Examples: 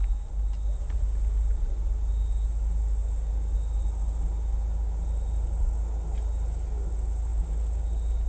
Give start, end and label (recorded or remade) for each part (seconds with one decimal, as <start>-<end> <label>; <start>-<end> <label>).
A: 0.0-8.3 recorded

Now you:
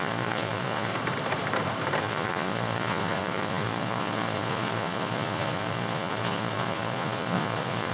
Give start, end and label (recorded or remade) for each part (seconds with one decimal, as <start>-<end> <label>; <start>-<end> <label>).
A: 0.0-0.9 remade; 0.9-2.0 recorded; 2.0-7.9 remade

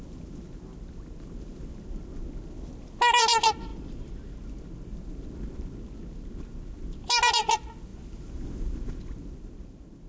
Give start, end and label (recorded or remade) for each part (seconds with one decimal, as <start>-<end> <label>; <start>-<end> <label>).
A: 0.0-10.1 recorded

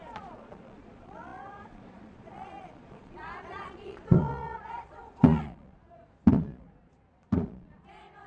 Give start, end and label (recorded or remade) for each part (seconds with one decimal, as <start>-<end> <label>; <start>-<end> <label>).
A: 0.0-8.3 remade

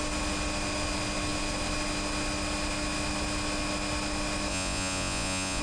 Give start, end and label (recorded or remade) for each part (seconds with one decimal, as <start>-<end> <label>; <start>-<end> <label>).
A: 0.0-4.5 recorded; 4.5-5.6 remade